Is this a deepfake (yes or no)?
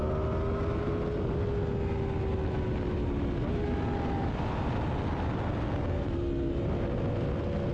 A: no